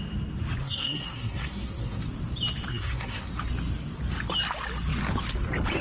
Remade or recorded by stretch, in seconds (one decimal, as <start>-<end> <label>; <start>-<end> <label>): 0.0-0.6 recorded; 0.6-2.0 remade; 2.0-2.7 recorded; 2.7-3.3 remade; 3.3-5.8 recorded